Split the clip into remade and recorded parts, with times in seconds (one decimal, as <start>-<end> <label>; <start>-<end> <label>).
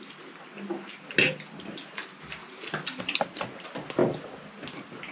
0.0-5.1 recorded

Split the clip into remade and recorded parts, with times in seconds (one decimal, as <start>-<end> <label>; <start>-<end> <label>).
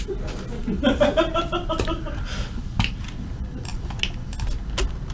0.0-5.1 recorded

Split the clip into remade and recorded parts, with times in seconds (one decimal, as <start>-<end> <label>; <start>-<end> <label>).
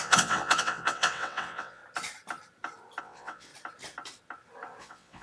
0.0-1.8 remade; 1.8-3.0 recorded; 3.0-3.5 remade; 3.5-4.8 recorded; 4.8-5.2 remade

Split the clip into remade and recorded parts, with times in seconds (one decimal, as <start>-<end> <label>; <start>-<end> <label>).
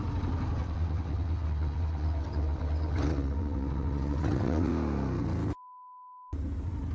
0.0-0.6 recorded; 0.6-4.7 remade; 4.7-6.9 recorded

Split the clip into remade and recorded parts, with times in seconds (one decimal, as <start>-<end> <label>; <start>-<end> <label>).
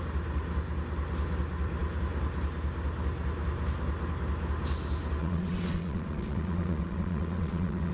0.0-5.2 recorded; 5.2-7.9 remade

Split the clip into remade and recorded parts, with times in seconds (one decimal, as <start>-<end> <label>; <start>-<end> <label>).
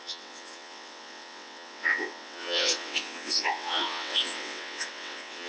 0.0-5.5 remade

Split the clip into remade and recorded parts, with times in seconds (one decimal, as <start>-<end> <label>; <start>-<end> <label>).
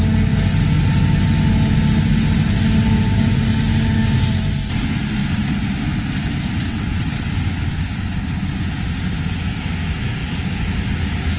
0.0-6.7 recorded; 6.7-7.3 remade; 7.3-11.4 recorded